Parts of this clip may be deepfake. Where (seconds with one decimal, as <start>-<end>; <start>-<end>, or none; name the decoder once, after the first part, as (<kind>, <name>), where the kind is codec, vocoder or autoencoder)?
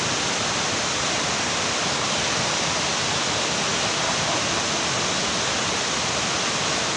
none